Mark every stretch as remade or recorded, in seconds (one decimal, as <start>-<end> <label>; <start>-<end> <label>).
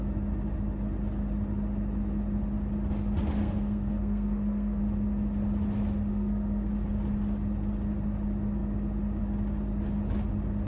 0.0-3.4 recorded; 3.4-4.8 remade; 4.8-6.1 recorded; 6.1-6.7 remade; 6.7-10.7 recorded